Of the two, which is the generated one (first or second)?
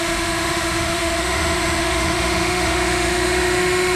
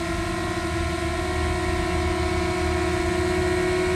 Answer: first